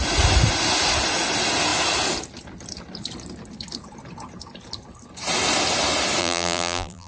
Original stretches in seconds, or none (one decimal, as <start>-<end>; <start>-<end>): 0.0-6.2